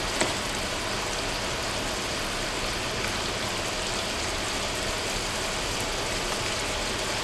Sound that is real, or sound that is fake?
real